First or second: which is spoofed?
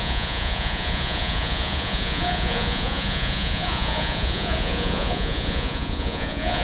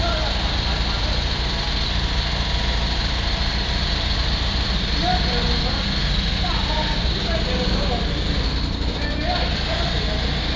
first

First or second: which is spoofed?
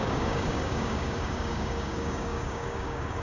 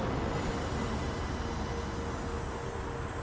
first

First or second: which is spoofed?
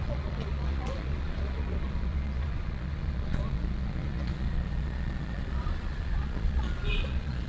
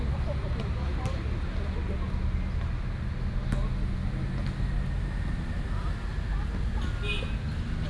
first